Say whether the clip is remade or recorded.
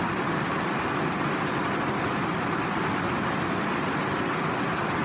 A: recorded